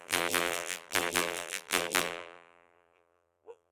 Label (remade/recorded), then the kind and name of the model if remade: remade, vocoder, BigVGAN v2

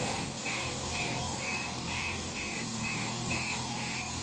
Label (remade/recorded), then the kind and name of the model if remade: remade, codec, DAC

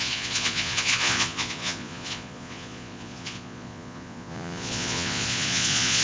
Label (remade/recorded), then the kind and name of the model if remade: remade, vocoder, Vocos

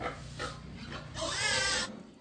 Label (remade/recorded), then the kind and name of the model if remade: recorded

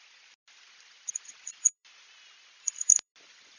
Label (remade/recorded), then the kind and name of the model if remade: recorded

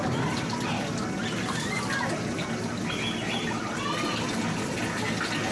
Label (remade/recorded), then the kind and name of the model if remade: recorded